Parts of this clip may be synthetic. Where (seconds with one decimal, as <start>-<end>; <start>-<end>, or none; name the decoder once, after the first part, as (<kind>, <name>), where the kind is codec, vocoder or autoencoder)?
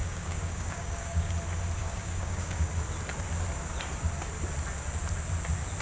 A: 0.0-1.3 (codec, DAC); 1.8-2.7